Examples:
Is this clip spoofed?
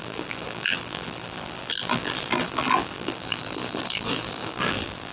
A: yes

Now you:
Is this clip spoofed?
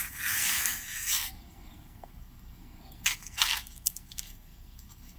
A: yes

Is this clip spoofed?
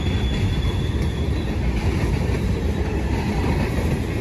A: no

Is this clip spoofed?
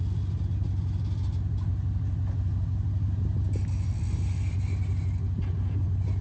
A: no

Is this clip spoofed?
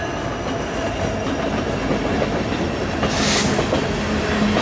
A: no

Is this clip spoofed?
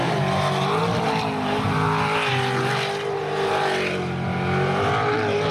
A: no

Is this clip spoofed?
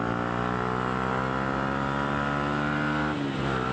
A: no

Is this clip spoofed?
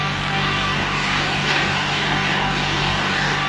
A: yes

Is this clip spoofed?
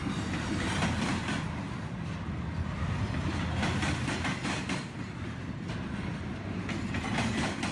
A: no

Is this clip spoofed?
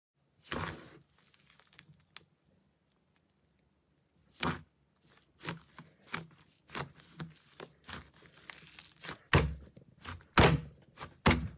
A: no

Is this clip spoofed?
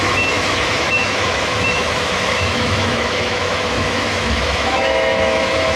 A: yes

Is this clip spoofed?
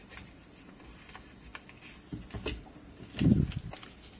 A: no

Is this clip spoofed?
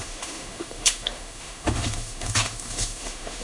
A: yes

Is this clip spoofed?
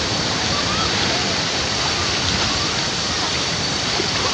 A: yes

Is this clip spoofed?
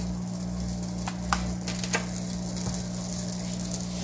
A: no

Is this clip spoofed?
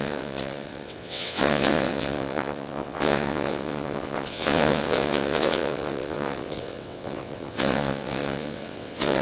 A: yes